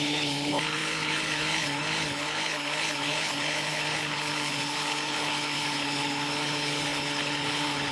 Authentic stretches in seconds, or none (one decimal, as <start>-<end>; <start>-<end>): none